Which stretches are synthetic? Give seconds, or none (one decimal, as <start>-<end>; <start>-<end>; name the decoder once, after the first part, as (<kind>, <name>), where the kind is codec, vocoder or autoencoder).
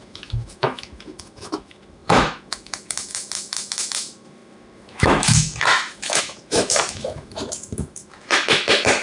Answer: 0.0-9.0 (autoencoder, DAC-VAE)